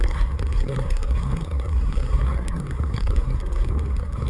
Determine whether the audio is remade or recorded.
remade